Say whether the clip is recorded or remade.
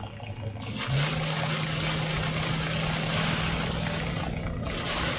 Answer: recorded